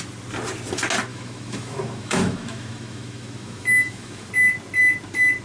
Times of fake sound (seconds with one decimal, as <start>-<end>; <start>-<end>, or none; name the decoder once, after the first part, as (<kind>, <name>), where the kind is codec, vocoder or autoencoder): 1.1-4.3 (autoencoder, DAC-VAE)